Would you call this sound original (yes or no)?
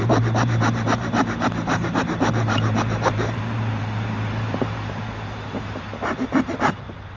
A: no